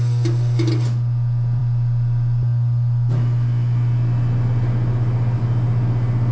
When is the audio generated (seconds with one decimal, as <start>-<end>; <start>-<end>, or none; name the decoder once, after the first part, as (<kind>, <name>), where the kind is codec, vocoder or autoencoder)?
none

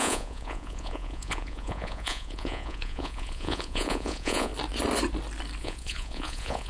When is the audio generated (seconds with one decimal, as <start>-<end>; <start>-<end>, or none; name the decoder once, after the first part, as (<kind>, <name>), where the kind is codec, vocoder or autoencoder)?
0.0-4.5 (vocoder, Vocos); 5.6-6.7